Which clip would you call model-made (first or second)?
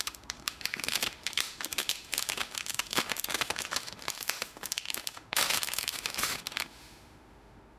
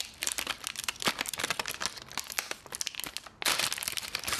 first